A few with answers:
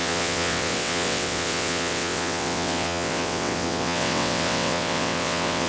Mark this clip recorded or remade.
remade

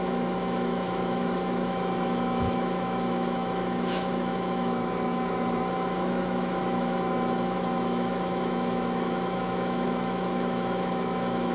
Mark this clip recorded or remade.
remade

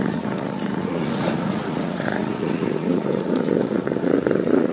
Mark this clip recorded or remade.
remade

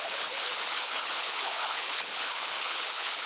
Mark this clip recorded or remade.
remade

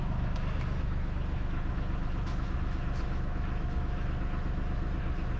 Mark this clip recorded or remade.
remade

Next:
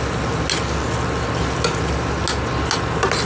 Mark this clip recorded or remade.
recorded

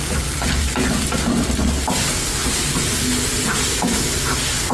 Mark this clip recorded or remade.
recorded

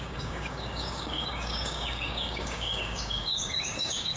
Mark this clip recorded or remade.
remade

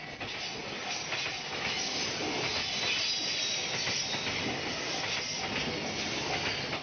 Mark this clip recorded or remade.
recorded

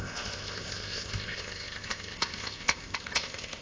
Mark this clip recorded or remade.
remade